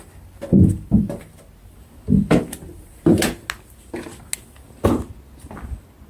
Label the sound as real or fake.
real